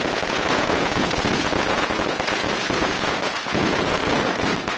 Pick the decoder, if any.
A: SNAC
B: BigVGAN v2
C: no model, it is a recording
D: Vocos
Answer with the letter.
D